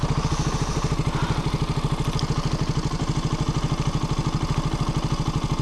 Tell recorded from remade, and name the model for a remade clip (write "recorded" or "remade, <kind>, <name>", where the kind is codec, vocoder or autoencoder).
recorded